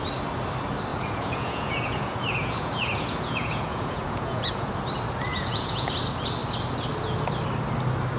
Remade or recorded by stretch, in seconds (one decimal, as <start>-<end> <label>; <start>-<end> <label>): 0.0-0.9 recorded; 0.9-4.7 remade; 4.7-5.3 recorded; 5.3-5.9 remade; 5.9-8.2 recorded